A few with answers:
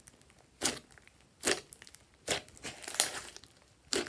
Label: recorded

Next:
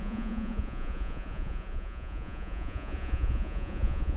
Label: remade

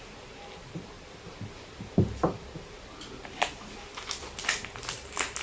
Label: recorded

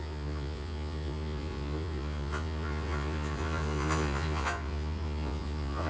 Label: remade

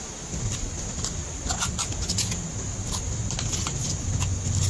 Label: recorded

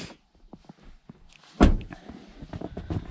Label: recorded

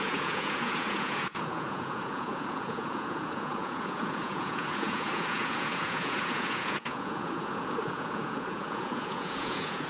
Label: remade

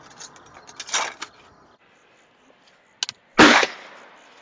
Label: recorded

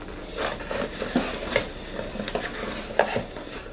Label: recorded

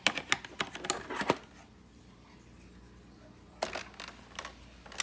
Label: recorded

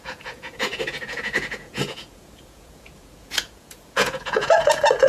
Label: remade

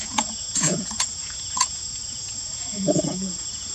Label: remade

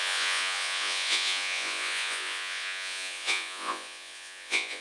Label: remade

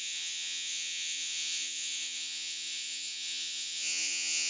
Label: remade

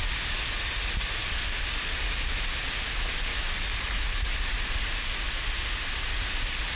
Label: recorded